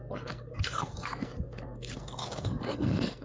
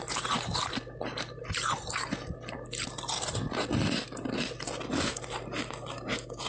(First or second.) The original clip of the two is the second